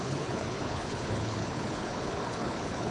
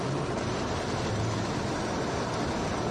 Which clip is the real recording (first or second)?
second